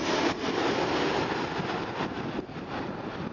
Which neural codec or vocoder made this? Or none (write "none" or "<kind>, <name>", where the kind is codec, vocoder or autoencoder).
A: none